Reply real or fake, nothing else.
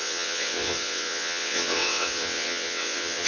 fake